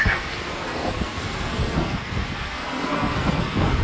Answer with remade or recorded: remade